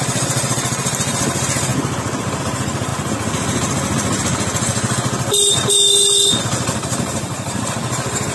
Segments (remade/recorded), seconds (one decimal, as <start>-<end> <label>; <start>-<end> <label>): 0.0-1.7 remade; 1.7-2.4 recorded; 2.4-2.9 remade; 2.9-6.4 recorded; 6.4-8.3 remade

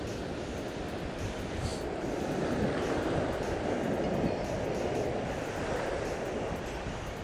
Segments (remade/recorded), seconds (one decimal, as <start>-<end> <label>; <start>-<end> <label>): 0.0-7.2 recorded

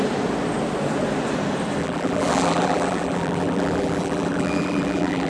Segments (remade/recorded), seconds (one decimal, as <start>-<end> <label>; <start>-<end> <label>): 0.0-1.8 recorded; 1.8-5.3 remade

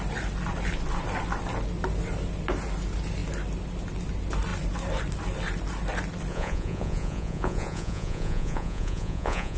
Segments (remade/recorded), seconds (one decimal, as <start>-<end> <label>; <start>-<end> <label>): 0.0-6.3 recorded; 6.3-9.6 remade

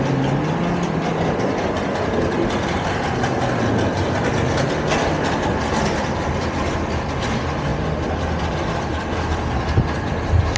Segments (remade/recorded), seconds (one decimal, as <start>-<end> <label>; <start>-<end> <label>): 0.0-10.6 recorded

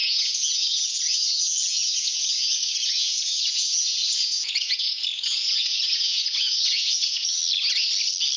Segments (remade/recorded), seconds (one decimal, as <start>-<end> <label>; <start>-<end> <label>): 0.0-7.4 remade; 7.4-8.4 recorded

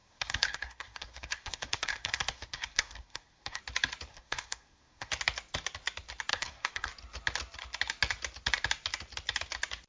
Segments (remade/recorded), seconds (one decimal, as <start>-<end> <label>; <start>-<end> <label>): 0.0-3.6 remade; 3.6-4.1 recorded; 4.1-5.1 remade; 5.1-6.3 recorded; 6.3-6.9 remade; 6.9-9.9 recorded

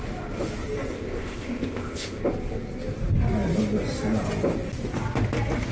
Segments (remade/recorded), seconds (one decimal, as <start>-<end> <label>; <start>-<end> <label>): 0.0-0.9 recorded; 0.9-2.2 remade; 2.2-5.7 recorded